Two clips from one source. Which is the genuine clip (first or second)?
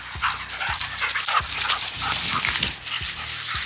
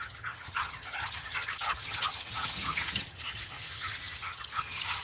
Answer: first